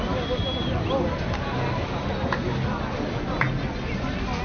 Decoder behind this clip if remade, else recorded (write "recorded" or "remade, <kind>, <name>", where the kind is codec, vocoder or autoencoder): recorded